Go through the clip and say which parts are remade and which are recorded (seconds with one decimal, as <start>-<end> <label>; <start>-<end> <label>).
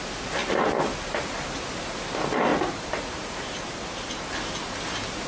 0.0-0.4 recorded; 0.4-1.6 remade; 1.6-2.5 recorded; 2.5-4.3 remade; 4.3-5.3 recorded